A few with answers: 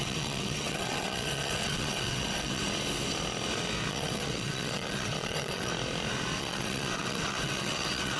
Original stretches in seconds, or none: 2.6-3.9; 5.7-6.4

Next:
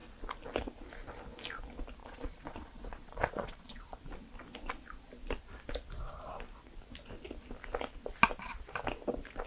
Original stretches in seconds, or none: 0.0-2.0; 4.0-9.5

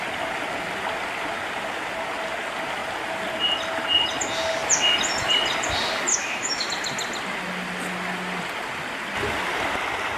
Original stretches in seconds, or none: 0.0-6.1; 6.7-10.2

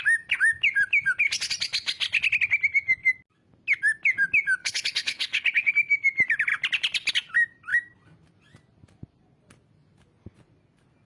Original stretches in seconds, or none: 0.0-4.6; 5.7-11.1

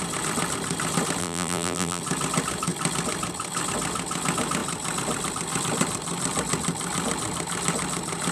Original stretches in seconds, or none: 0.0-1.2; 2.0-8.3

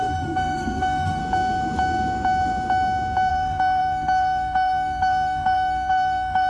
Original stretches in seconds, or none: 1.2-3.3

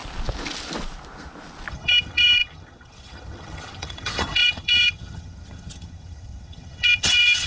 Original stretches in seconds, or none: 0.0-1.7

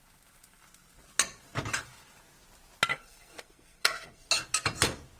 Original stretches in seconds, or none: 0.0-2.9; 4.3-5.2